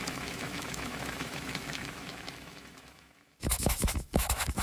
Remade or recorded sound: remade